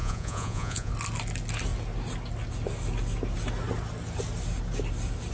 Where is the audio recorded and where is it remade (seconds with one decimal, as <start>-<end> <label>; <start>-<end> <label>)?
0.0-0.9 remade; 0.9-5.3 recorded